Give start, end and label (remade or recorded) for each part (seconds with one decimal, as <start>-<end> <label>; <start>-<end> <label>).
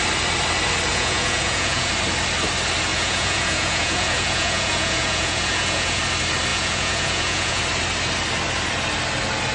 0.0-0.9 recorded; 0.9-1.9 remade; 1.9-2.9 recorded; 2.9-6.0 remade; 6.0-6.5 recorded; 6.5-7.6 remade; 7.6-9.5 recorded